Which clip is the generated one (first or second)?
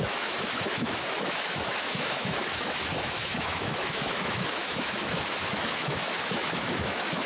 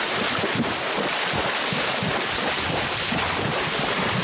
first